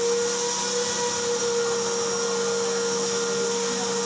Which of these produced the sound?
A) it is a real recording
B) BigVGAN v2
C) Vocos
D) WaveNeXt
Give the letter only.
A